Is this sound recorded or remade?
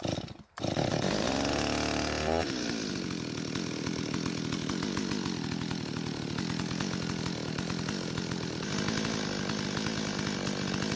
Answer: recorded